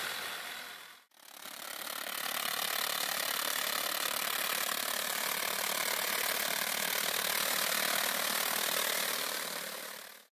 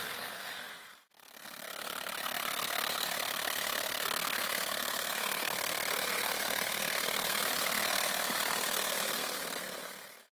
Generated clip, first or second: second